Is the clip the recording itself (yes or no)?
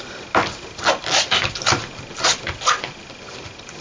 yes